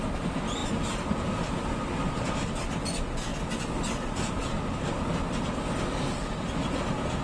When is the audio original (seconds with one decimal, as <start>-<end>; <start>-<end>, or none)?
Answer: 0.0-7.2